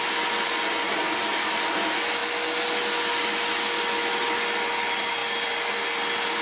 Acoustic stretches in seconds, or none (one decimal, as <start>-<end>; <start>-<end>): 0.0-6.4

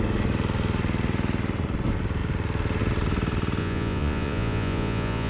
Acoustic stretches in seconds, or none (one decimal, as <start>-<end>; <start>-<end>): 0.0-3.6

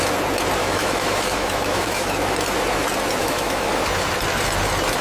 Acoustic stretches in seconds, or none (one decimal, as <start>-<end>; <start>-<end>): 0.0-0.6; 2.1-3.2; 3.7-5.0

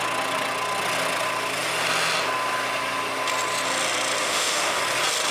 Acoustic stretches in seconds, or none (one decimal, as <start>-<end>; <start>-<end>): 0.0-4.2; 4.8-5.3

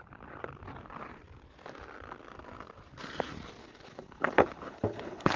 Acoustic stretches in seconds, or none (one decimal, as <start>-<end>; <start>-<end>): 0.0-3.6